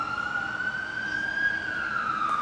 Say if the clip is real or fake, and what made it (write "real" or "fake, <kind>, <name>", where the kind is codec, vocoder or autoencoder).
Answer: real